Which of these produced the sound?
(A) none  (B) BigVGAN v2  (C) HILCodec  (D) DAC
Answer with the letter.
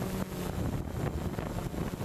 A